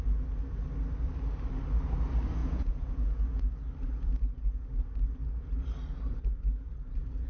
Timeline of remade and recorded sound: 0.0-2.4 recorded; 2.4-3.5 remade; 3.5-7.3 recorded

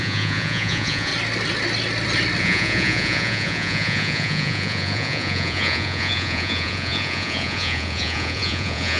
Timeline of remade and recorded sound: 0.0-1.1 remade; 1.1-2.4 recorded; 2.4-9.0 remade